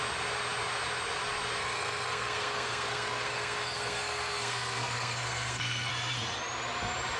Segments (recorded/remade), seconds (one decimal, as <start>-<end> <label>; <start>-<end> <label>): 0.0-1.6 recorded; 1.6-5.9 remade; 5.9-7.2 recorded